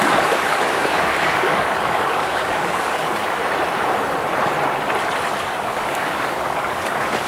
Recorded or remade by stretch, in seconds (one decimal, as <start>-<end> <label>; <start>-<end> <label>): 0.0-3.4 remade; 3.4-5.4 recorded; 5.4-7.3 remade